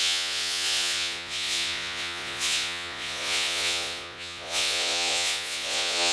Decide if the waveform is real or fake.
fake